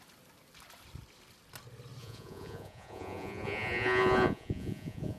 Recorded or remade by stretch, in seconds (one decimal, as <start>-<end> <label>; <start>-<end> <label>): 0.0-2.0 recorded; 2.0-5.2 remade